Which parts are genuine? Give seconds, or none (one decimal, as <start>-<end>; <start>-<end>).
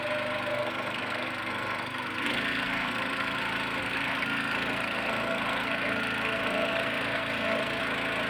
0.0-0.5; 3.4-3.8; 7.8-8.3